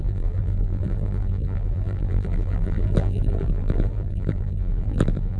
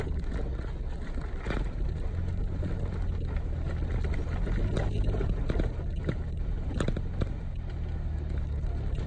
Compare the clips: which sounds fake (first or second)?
first